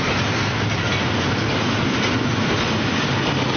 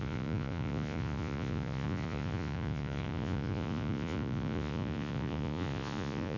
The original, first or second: first